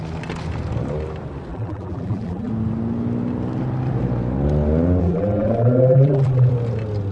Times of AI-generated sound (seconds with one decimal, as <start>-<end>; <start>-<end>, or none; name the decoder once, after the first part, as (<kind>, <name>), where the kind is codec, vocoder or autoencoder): 1.5-2.5 (vocoder, BigVGAN v2); 5.0-6.5